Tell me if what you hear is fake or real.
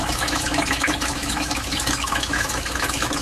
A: fake